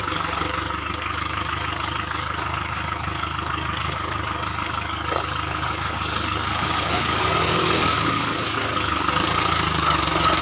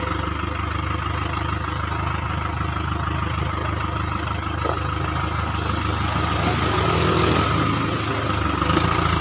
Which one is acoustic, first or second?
second